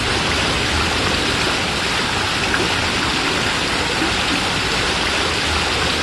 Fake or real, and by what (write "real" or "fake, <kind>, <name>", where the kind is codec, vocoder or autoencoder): fake, vocoder, BigVGAN v2